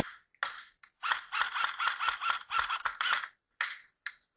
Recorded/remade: recorded